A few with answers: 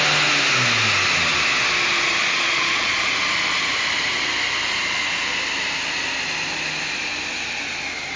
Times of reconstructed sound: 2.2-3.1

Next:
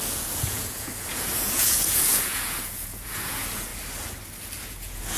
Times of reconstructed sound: 0.0-3.7; 4.6-5.2

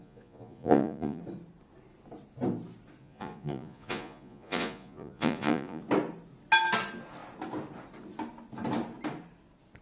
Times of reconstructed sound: 0.0-1.2; 3.0-5.8

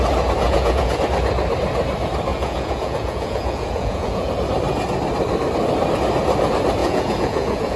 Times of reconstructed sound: 0.4-1.0; 2.3-4.3; 6.8-7.8

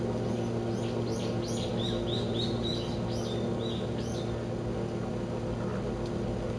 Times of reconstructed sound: none

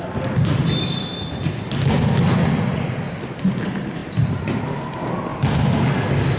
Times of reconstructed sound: 2.4-3.0